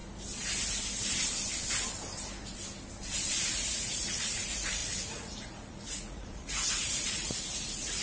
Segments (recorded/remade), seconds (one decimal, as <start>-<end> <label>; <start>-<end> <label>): 0.0-3.4 recorded; 3.4-8.0 remade